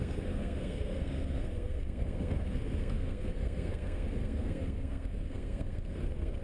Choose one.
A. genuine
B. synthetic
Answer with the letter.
B